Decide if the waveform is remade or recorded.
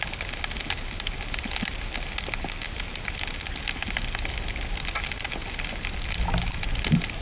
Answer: recorded